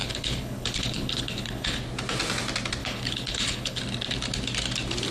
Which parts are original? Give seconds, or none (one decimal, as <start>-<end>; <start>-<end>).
1.8-2.8; 3.8-5.1